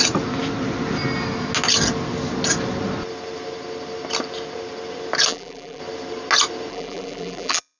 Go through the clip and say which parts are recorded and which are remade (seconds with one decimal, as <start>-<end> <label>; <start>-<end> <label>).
0.0-5.3 recorded; 5.3-5.8 remade; 5.8-6.7 recorded; 6.7-7.8 remade